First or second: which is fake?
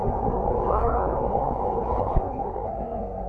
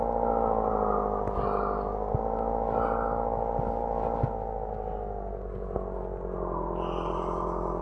first